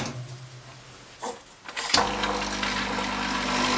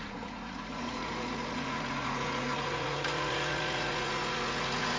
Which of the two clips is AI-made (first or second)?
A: second